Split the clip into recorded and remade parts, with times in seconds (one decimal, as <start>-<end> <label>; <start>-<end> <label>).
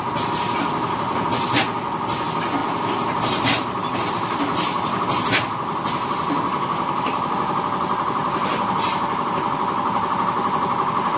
0.0-2.6 recorded; 2.6-4.1 remade; 4.1-11.2 recorded